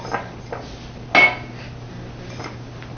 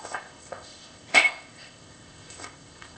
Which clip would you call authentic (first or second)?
first